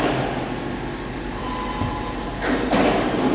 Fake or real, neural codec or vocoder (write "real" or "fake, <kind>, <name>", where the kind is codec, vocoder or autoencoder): real